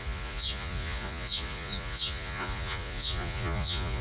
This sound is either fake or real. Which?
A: fake